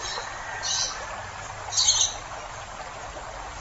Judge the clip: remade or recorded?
recorded